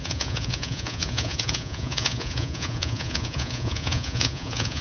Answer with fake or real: fake